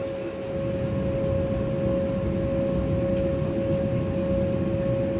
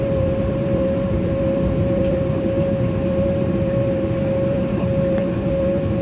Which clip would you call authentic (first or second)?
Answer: first